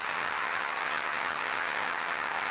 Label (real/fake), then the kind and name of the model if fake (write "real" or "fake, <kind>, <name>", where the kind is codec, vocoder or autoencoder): fake, vocoder, HiFi-GAN